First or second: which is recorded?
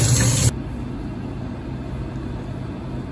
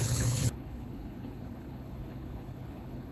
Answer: first